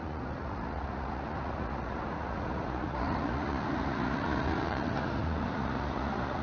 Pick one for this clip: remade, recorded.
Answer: remade